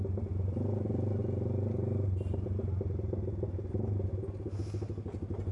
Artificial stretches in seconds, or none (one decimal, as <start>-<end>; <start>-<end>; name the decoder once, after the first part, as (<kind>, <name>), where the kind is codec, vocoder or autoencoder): none

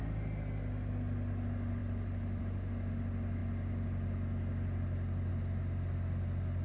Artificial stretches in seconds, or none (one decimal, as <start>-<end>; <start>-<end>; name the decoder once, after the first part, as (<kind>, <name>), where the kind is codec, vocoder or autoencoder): 1.8-2.4 (vocoder, BigVGAN v2)

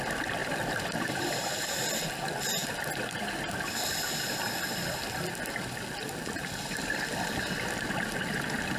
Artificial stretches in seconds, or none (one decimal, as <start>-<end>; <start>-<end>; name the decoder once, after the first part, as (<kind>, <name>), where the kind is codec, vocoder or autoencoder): 0.4-1.9 (vocoder, BigVGAN v2)

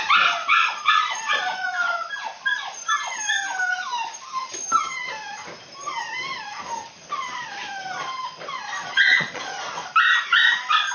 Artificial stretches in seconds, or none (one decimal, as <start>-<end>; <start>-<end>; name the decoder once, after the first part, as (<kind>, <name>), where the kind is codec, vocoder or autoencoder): 0.4-2.1 (vocoder, Vocos); 8.8-9.5

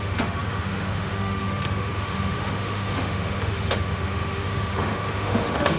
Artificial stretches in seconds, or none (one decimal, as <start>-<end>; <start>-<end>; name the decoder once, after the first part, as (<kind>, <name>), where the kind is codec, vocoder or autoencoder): 0.0-5.8 (autoencoder, DAC-VAE)